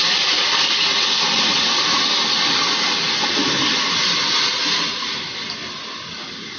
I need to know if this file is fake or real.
real